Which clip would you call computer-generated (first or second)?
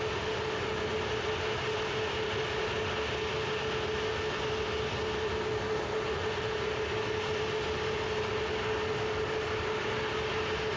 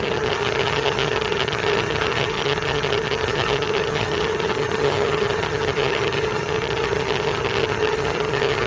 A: second